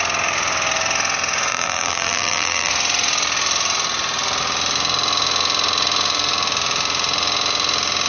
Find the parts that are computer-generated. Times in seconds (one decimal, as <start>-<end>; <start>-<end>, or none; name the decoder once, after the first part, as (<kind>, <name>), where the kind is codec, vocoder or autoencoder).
1.5-2.7 (vocoder, BigVGAN v2)